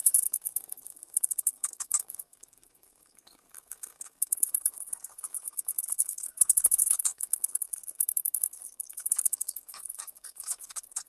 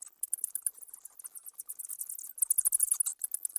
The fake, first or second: first